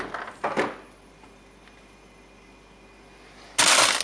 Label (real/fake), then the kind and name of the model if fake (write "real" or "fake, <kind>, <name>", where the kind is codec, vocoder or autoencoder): real